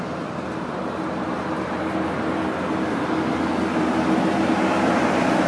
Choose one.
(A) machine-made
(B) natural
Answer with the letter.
A